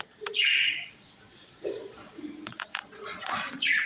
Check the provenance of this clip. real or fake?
fake